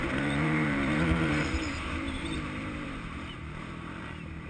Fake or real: fake